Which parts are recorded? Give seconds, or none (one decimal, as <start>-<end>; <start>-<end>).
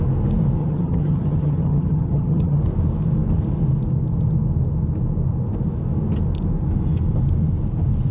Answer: 0.0-0.6; 2.6-8.1